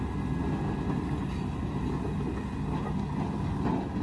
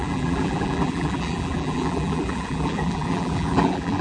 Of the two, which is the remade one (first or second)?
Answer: second